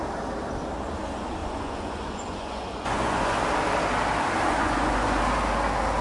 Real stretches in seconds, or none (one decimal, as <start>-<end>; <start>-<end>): 0.0-1.4; 3.4-4.5; 5.2-6.0

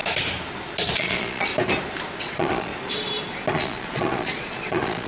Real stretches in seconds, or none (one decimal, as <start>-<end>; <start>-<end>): 0.0-0.9; 1.5-2.2; 2.7-3.5

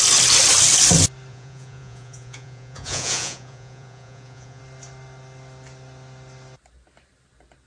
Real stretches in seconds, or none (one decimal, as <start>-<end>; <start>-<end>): 0.0-1.3; 4.6-7.7

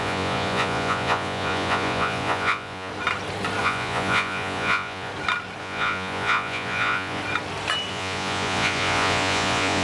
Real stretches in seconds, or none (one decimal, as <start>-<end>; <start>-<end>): 2.9-3.6; 5.1-5.6; 7.2-7.9

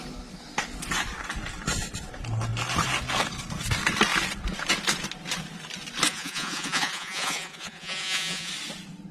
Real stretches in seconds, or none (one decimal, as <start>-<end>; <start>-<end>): 0.0-6.1; 8.5-9.1

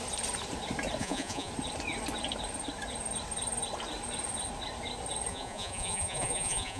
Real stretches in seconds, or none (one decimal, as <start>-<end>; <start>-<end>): 0.0-1.0; 1.5-5.3